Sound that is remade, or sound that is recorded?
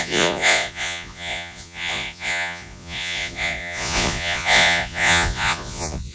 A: remade